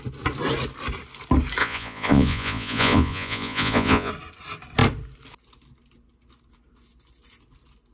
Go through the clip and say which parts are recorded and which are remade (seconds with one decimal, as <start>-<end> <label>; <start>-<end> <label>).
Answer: 0.0-1.6 recorded; 1.6-4.1 remade; 4.1-7.9 recorded